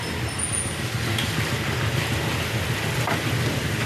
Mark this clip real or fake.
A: real